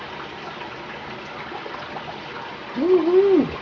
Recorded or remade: recorded